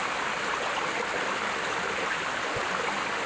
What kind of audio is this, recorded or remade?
recorded